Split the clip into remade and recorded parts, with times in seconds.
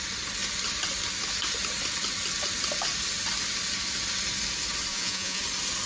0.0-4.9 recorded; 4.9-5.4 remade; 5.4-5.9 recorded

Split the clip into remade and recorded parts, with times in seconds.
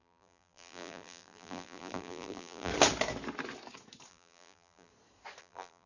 0.0-2.7 remade; 2.7-4.1 recorded; 4.1-4.9 remade; 4.9-5.4 recorded; 5.4-5.9 remade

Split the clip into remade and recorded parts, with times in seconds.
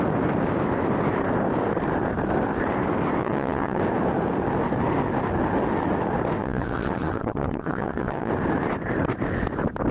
0.0-3.2 recorded; 3.2-3.8 remade; 3.8-6.4 recorded; 6.4-8.3 remade; 8.3-9.9 recorded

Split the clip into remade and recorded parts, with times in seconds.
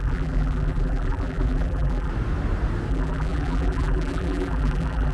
0.0-2.1 remade; 2.1-2.9 recorded; 2.9-5.1 remade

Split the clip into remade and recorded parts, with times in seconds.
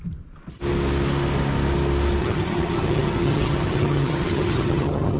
0.0-2.2 recorded; 2.2-5.2 remade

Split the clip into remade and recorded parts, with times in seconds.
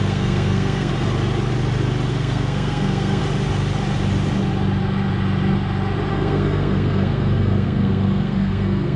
0.0-0.9 remade; 0.9-2.1 recorded; 2.1-3.2 remade; 3.2-6.1 recorded; 6.1-9.0 remade